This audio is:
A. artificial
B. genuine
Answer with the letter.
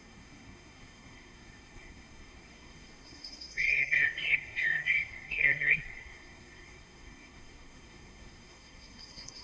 A